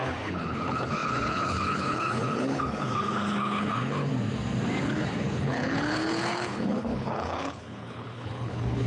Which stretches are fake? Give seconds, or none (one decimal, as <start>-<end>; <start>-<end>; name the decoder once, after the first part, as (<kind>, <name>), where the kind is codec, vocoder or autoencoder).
0.0-4.1 (codec, HILCodec); 4.8-8.9